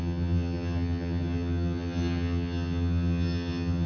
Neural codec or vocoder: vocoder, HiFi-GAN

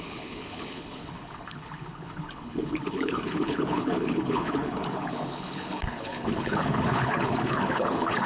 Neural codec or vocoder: codec, HILCodec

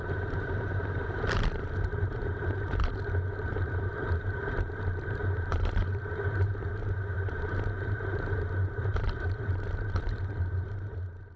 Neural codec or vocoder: vocoder, BigVGAN v2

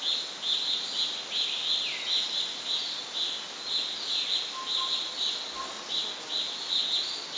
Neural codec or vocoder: none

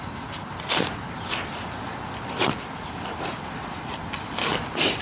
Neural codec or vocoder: vocoder, BigVGAN v2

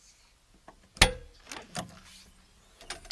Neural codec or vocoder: none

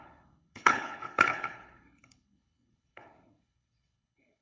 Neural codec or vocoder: codec, HILCodec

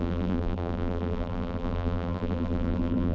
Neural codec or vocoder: vocoder, BigVGAN v2